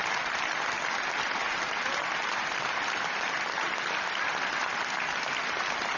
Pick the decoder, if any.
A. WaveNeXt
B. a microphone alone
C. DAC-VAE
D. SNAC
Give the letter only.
B